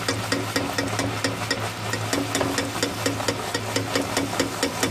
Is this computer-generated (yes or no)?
no